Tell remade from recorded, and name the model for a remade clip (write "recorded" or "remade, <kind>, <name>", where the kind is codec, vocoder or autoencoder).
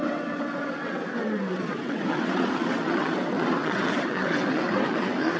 remade, vocoder, WaveNeXt